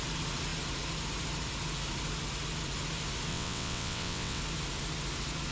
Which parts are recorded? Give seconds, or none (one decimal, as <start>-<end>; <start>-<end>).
0.0-3.3; 4.4-5.5